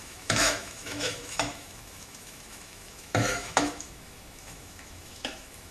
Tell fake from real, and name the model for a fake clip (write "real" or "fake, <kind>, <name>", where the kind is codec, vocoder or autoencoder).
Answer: fake, autoencoder, DAC-VAE